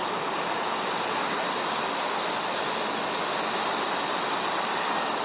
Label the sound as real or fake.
real